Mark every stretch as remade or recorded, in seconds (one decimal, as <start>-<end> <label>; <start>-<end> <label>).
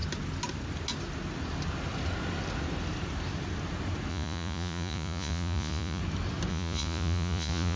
0.0-4.1 recorded; 4.1-6.0 remade; 6.0-6.5 recorded; 6.5-7.8 remade